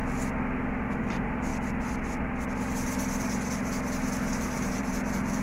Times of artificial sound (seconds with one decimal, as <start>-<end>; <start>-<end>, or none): 1.0-1.5; 4.4-5.4